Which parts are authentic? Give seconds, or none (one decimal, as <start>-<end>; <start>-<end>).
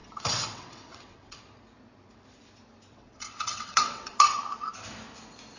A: 1.4-2.9; 4.4-5.6